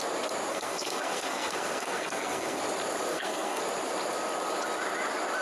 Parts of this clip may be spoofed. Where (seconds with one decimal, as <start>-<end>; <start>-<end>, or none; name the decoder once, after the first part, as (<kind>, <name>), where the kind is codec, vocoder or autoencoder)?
0.5-2.6 (codec, SNAC); 3.1-3.6